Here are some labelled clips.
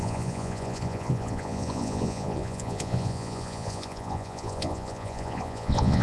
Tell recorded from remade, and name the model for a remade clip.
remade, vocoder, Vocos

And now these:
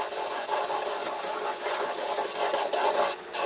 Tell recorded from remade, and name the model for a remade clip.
remade, vocoder, Vocos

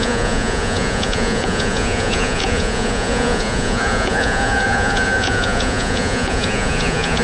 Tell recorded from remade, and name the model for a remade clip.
remade, vocoder, Vocos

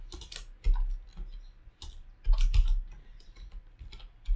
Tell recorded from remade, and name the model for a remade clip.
recorded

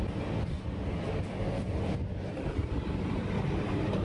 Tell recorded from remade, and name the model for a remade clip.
recorded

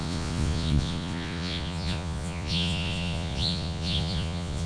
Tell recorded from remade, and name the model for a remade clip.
remade, vocoder, Vocos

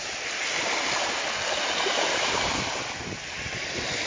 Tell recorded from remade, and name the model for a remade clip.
recorded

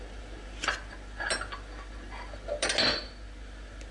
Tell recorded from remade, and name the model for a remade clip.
recorded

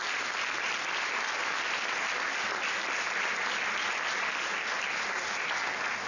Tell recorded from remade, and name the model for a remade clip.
recorded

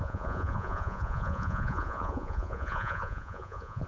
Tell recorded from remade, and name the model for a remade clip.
remade, vocoder, Vocos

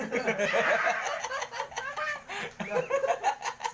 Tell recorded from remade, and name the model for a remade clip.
recorded